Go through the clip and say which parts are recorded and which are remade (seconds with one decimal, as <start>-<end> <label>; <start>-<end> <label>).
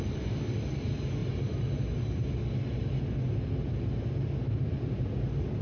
0.0-5.6 recorded